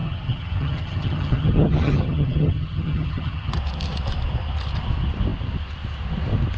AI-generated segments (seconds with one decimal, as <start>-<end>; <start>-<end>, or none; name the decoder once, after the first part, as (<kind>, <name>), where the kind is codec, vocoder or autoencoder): 0.0-3.5 (vocoder, HiFi-GAN)